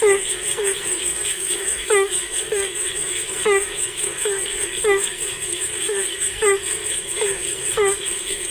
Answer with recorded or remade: remade